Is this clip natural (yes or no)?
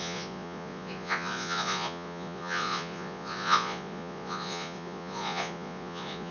no